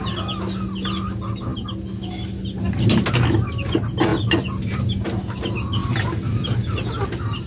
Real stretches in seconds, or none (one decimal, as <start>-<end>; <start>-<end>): 0.0-7.5